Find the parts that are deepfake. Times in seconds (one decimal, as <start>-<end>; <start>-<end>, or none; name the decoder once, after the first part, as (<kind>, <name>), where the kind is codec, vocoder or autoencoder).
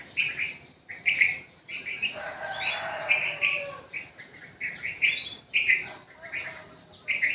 0.0-4.4 (vocoder, BigVGAN v2)